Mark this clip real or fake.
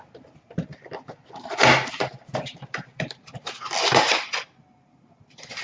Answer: real